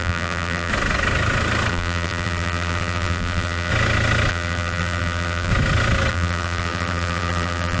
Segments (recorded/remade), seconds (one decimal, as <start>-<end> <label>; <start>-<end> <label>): 0.0-0.7 remade; 0.7-1.7 recorded; 1.7-3.7 remade; 3.7-4.3 recorded; 4.3-5.5 remade; 5.5-6.1 recorded; 6.1-7.8 remade